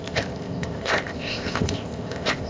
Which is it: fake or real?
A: fake